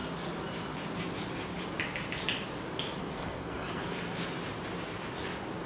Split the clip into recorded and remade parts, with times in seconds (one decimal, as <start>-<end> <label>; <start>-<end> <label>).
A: 0.0-3.0 recorded; 3.0-3.8 remade; 3.8-5.7 recorded